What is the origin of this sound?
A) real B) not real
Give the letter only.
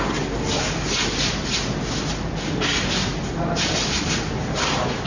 A